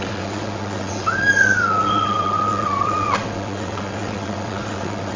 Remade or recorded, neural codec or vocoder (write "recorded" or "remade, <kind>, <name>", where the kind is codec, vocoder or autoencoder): remade, vocoder, WaveNeXt